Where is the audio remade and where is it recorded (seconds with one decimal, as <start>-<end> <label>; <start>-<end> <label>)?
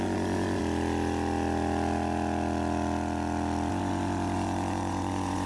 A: 0.0-0.6 remade; 0.6-3.7 recorded; 3.7-5.5 remade